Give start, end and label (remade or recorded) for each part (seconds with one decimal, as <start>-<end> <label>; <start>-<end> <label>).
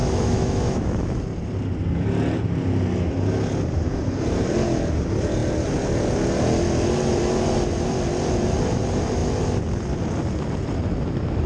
0.0-1.2 remade; 1.2-11.5 recorded